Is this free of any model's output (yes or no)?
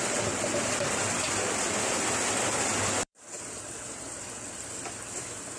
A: no